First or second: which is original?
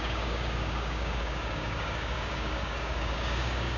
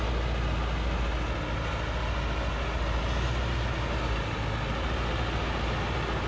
second